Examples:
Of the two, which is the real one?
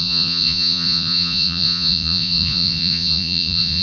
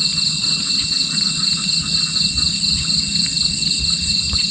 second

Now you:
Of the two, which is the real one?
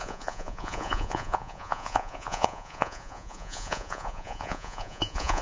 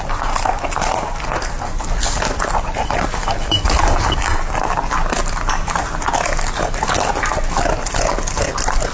second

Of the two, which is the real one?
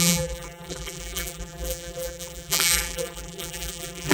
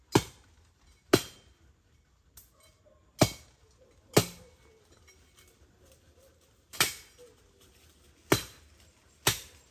second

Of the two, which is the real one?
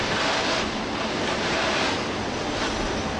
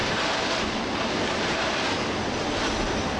first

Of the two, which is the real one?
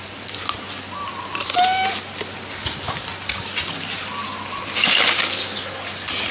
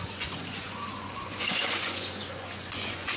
first